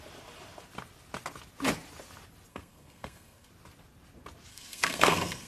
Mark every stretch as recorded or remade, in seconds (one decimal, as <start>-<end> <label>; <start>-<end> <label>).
0.0-2.5 recorded; 2.5-3.5 remade; 3.5-4.5 recorded; 4.5-5.5 remade